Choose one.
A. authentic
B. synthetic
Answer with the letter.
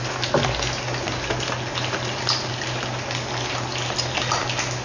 A